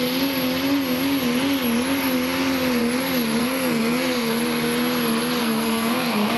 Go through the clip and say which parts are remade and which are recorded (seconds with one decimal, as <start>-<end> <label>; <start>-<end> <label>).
0.0-3.4 recorded; 3.4-4.4 remade; 4.4-5.4 recorded; 5.4-6.4 remade

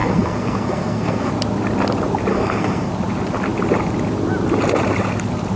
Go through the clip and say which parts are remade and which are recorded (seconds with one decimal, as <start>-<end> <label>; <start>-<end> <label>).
0.0-1.3 remade; 1.3-2.3 recorded; 2.3-2.9 remade; 2.9-5.6 recorded

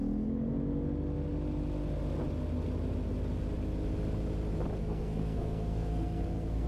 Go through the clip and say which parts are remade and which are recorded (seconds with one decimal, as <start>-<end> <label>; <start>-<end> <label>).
0.0-4.8 recorded; 4.8-6.7 remade

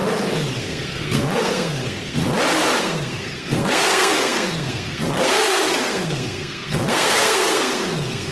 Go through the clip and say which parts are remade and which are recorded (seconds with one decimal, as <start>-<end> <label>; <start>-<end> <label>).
0.0-0.6 recorded; 0.6-2.2 remade; 2.2-2.8 recorded; 2.8-8.3 remade

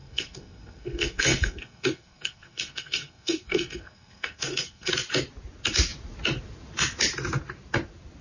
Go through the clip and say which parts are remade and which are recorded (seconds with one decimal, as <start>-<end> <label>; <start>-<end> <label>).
0.0-4.9 remade; 4.9-8.2 recorded

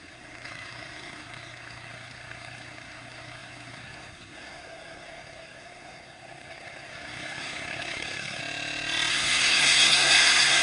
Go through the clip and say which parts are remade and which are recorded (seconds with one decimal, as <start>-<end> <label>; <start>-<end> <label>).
0.0-8.4 remade; 8.4-9.1 recorded; 9.1-10.6 remade